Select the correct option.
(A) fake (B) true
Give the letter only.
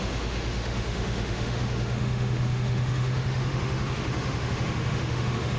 A